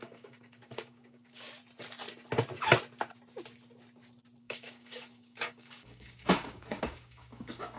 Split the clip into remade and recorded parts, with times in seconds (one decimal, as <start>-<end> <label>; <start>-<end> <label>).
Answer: 0.0-1.6 remade; 1.6-4.4 recorded; 4.4-7.8 remade